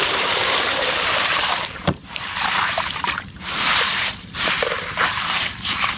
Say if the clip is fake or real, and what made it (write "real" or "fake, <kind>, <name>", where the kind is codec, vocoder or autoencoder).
fake, vocoder, BigVGAN v2